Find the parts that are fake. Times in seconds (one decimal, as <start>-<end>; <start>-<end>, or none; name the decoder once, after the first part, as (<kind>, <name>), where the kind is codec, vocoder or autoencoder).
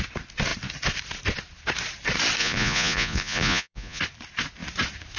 2.4-4.0 (vocoder, Vocos)